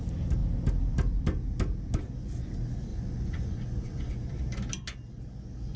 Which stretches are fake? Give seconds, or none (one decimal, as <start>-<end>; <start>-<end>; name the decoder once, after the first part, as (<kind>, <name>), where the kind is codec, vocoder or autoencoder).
2.9-4.1 (vocoder, Vocos)